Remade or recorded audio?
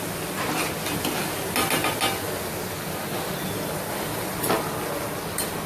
recorded